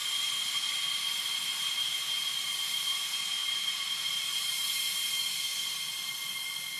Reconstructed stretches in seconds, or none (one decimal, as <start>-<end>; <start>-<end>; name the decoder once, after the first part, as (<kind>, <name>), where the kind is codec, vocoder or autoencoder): 0.0-5.5 (vocoder, BigVGAN v2)